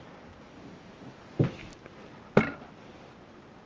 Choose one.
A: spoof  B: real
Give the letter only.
B